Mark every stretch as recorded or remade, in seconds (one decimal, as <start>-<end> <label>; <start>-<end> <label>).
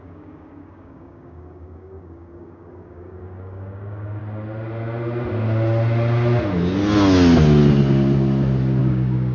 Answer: 0.0-4.2 remade; 4.2-8.8 recorded; 8.8-9.3 remade